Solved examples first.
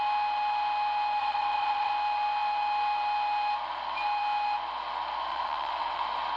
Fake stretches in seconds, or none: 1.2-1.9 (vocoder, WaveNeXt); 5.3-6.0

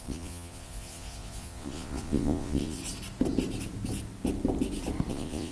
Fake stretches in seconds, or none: 0.0-2.8 (vocoder, Vocos); 5.1-5.5

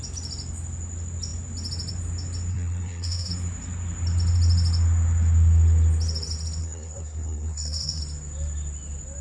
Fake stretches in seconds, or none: 2.5-3.3 (codec, SNAC); 6.6-8.0

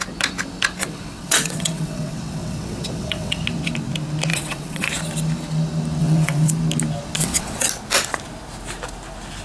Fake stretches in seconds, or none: 0.8-3.4 (vocoder, WaveNeXt); 4.3-4.9; 6.0-6.5; 7.2-7.7

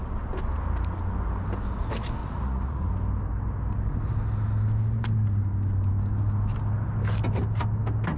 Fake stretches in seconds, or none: 2.2-2.9 (vocoder, Vocos)

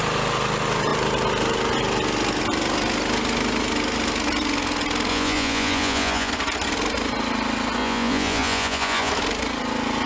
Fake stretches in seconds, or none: 5.1-6.3 (vocoder, Vocos); 7.8-9.1